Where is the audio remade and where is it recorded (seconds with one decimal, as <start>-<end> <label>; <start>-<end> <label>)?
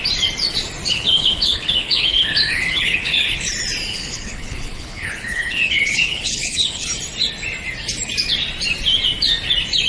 0.0-0.9 recorded; 0.9-3.5 remade; 3.5-3.9 recorded; 3.9-6.9 remade; 6.9-9.9 recorded